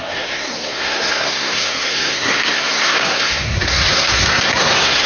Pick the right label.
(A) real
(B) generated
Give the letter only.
B